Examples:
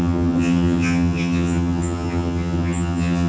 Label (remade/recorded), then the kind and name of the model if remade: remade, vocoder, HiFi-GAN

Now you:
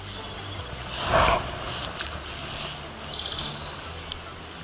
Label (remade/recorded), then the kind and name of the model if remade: recorded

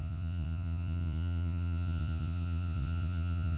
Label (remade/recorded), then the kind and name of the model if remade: remade, vocoder, Vocos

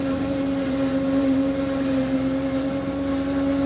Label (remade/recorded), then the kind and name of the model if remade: remade, vocoder, BigVGAN v2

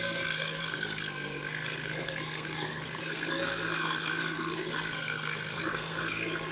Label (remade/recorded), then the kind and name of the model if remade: remade, codec, SNAC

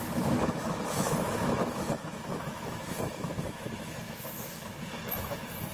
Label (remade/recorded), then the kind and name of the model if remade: remade, autoencoder, DAC-VAE